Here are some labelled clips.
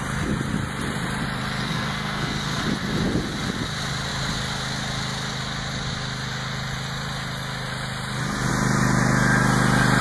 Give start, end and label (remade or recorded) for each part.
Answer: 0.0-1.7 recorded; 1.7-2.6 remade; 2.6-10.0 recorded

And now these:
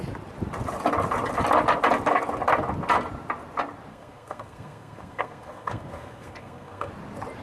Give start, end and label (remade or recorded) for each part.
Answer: 0.0-3.9 recorded; 3.9-6.9 remade; 6.9-7.4 recorded

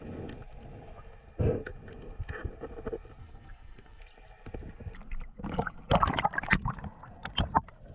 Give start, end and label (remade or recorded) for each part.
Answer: 0.0-3.2 recorded; 3.2-4.0 remade; 4.0-7.9 recorded